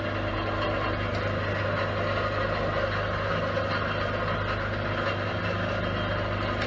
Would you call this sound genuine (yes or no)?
yes